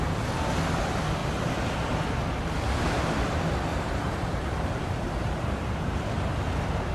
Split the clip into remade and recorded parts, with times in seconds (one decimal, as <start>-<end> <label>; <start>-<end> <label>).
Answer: 0.0-1.2 recorded; 1.2-2.0 remade; 2.0-3.7 recorded; 3.7-6.3 remade; 6.3-6.9 recorded